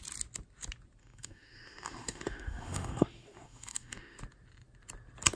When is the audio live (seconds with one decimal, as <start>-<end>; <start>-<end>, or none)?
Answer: 0.0-1.0; 4.2-5.4